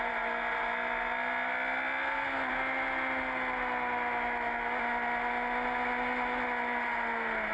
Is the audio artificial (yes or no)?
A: no